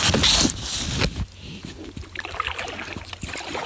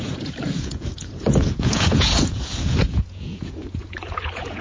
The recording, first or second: first